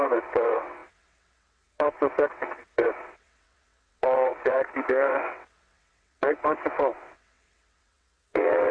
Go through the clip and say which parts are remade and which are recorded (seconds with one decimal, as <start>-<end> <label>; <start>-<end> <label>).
0.0-8.7 remade